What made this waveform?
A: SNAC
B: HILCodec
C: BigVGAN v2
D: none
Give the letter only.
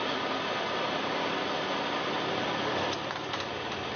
D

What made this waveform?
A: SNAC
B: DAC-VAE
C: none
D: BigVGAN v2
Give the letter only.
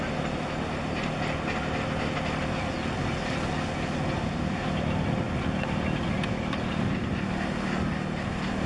C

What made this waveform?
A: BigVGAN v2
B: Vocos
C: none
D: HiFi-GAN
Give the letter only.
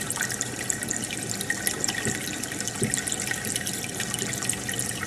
C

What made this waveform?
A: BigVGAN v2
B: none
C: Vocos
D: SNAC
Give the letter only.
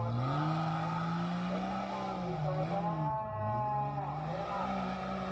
B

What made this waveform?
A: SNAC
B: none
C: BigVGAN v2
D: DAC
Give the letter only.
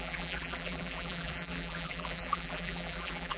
C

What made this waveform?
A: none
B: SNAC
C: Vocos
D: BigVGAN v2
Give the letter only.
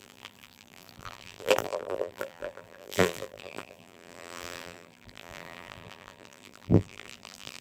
D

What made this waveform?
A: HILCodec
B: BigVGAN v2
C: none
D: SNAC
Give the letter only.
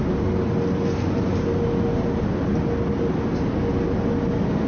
C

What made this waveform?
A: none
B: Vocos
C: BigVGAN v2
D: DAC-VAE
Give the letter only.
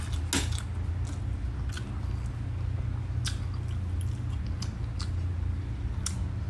A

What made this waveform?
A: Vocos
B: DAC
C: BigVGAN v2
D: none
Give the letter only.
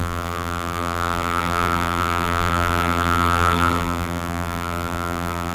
C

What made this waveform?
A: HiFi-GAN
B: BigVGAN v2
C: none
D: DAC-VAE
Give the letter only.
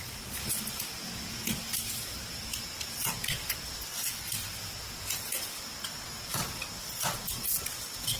C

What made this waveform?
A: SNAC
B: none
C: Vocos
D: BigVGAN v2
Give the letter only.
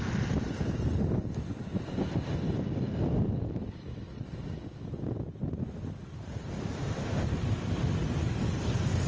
B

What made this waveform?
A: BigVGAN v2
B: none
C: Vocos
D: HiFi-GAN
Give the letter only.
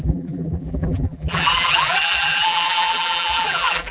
A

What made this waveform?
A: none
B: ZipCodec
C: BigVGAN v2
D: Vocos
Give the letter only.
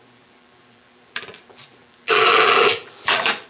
C